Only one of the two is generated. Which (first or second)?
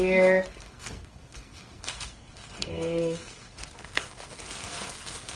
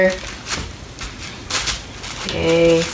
first